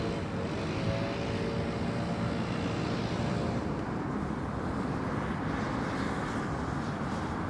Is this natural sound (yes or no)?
yes